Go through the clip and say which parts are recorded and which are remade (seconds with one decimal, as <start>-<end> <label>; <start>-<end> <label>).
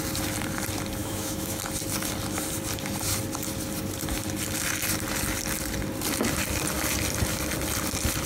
0.0-1.0 recorded; 1.0-1.6 remade; 1.6-8.3 recorded